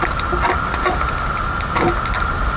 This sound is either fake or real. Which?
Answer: fake